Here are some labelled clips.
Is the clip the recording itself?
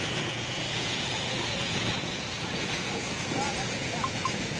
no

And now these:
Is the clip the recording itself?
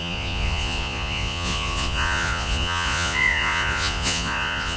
no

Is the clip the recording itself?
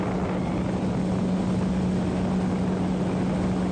yes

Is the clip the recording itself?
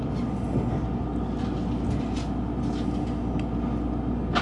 yes